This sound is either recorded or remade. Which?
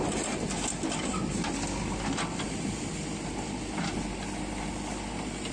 recorded